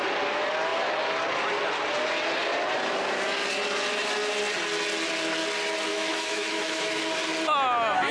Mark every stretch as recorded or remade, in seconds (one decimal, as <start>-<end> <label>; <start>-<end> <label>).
0.0-5.9 recorded; 5.9-7.0 remade; 7.0-8.1 recorded